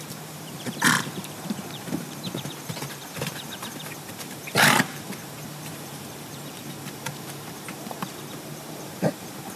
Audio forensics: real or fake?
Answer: fake